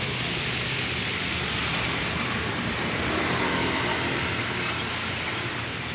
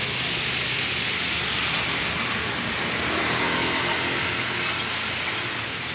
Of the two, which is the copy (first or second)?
first